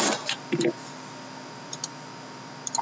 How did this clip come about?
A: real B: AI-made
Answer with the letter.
A